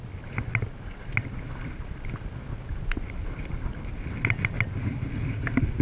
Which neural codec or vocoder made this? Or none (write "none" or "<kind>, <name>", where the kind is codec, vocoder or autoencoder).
none